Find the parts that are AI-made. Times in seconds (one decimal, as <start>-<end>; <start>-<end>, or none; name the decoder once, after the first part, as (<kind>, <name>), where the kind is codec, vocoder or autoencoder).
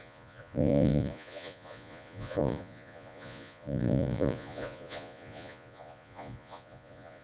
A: 0.0-7.2 (vocoder, Vocos)